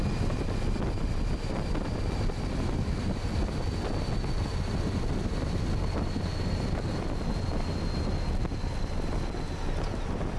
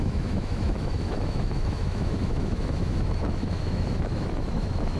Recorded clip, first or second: first